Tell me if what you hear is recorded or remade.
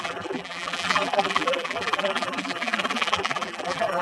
remade